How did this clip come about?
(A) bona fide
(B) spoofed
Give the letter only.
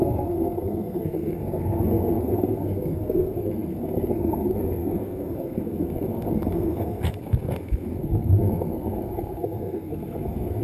B